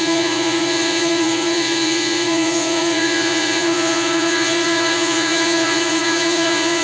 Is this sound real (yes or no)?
no